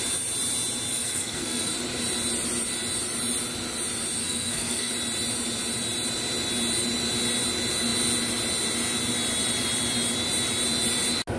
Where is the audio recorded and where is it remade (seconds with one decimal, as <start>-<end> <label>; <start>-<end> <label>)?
0.0-0.9 recorded; 0.9-1.7 remade; 1.7-4.2 recorded; 4.2-4.9 remade; 4.9-11.4 recorded

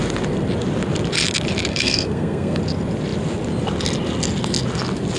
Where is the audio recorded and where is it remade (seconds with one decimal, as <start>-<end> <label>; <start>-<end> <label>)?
0.0-1.7 recorded; 1.7-2.6 remade; 2.6-5.2 recorded